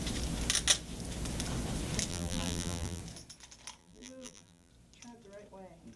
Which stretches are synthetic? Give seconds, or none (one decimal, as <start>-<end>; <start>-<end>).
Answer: 2.1-3.0; 3.8-4.7